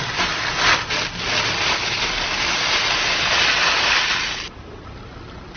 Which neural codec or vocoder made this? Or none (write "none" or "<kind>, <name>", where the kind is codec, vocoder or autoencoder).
none